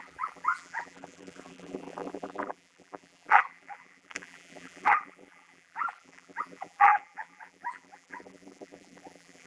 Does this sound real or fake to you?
fake